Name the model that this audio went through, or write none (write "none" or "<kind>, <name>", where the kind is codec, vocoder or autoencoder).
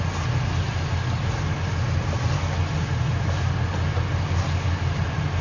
none